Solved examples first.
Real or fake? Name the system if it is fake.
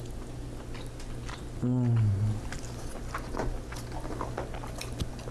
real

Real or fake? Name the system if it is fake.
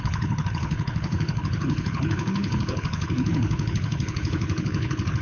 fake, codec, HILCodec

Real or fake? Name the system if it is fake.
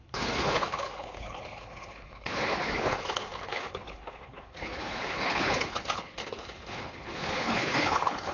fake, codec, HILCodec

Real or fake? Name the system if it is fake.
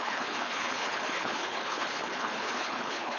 fake, codec, HILCodec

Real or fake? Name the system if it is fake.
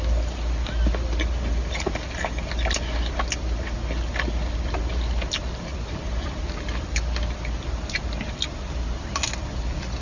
real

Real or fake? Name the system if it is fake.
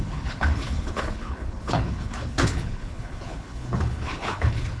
fake, codec, HILCodec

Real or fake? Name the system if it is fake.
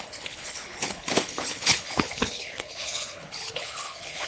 fake, codec, HILCodec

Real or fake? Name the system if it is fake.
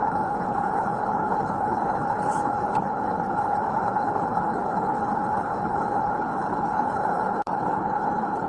fake, codec, HILCodec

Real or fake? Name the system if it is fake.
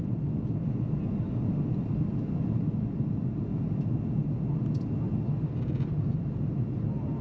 real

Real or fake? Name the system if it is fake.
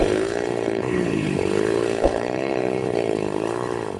fake, codec, HILCodec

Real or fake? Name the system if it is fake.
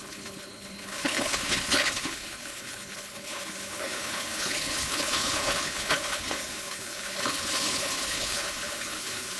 fake, codec, HILCodec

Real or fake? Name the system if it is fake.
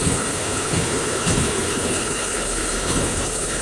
fake, codec, HILCodec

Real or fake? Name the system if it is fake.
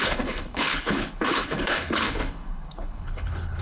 fake, codec, HILCodec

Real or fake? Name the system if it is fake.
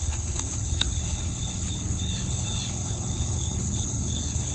fake, codec, HILCodec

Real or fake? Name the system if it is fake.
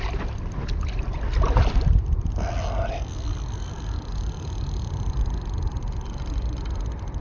real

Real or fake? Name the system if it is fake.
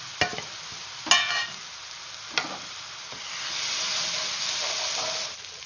real